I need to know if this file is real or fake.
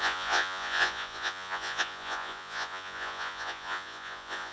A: fake